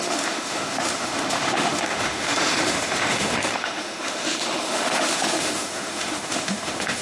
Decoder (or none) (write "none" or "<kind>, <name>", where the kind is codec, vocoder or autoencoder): autoencoder, DAC-VAE